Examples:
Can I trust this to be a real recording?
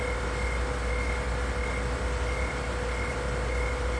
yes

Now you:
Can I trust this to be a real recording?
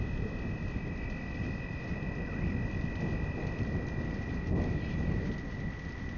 yes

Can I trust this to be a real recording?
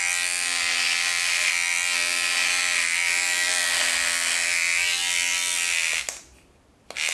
yes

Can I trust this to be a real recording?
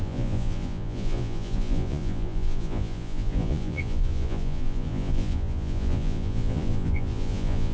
no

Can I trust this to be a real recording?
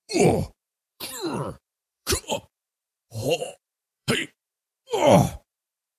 no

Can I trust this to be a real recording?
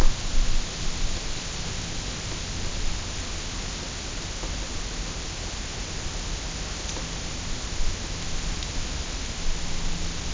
yes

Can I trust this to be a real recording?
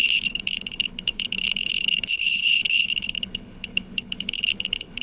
no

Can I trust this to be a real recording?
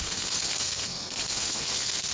no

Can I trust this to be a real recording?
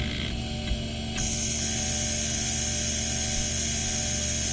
yes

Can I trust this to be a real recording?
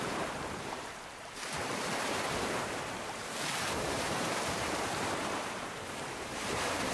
no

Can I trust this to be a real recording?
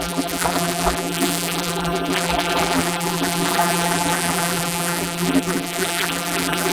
no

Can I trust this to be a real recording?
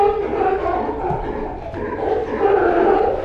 yes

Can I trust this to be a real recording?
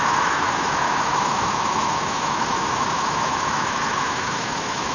no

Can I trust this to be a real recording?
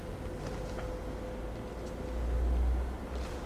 yes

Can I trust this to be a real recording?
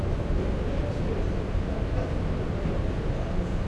yes